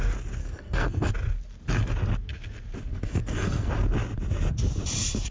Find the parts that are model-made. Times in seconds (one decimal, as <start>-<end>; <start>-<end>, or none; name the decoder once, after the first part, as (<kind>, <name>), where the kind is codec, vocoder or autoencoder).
0.4-1.1 (codec, SNAC); 2.9-3.7